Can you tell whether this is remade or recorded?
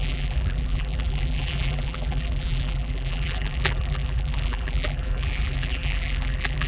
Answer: remade